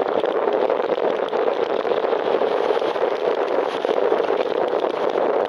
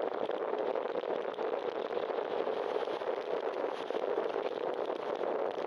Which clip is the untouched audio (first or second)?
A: second